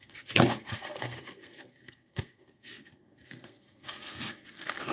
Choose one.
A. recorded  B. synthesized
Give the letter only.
B